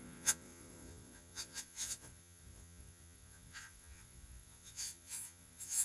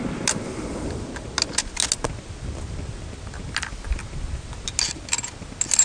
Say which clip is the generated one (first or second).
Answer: first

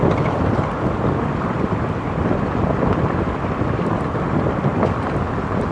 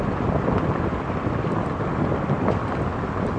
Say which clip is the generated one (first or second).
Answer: first